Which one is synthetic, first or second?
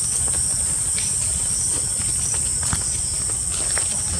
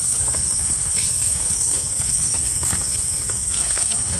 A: second